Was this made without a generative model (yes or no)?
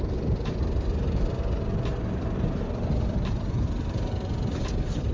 no